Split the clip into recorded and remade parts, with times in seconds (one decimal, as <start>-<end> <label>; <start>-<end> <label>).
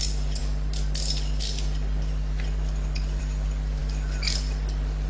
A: 0.0-5.1 recorded